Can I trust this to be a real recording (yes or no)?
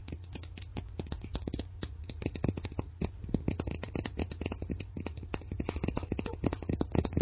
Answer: no